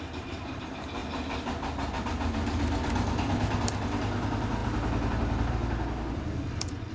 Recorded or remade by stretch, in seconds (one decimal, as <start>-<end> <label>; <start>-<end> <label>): 0.0-6.9 recorded